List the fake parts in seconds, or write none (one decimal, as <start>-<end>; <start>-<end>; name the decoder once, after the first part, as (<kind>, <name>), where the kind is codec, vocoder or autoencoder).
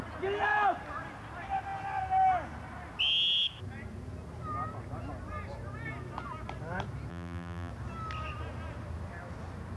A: 7.1-7.7 (vocoder, BigVGAN v2)